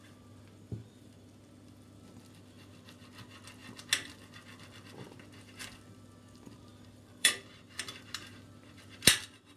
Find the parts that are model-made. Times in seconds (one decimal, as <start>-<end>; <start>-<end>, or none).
6.7-7.3